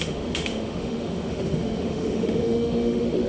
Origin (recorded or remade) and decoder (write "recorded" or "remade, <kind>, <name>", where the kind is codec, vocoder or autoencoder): remade, autoencoder, DAC-VAE